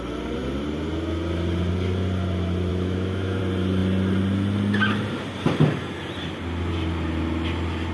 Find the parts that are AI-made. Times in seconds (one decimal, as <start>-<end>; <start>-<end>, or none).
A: 2.7-3.4